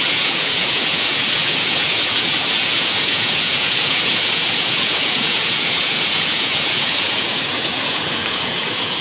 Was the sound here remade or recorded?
remade